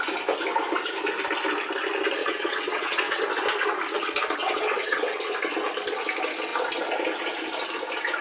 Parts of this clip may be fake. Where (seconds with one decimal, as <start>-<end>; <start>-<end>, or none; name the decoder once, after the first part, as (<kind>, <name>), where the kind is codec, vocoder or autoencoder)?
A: 2.2-3.2 (vocoder, WaveNeXt); 4.4-5.2